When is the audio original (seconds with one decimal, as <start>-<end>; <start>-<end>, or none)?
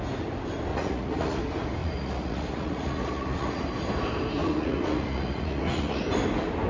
0.0-0.7; 1.4-1.8; 3.6-4.4; 6.0-6.7